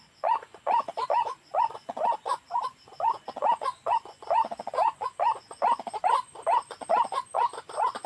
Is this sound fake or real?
fake